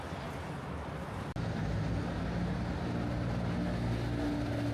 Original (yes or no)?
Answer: yes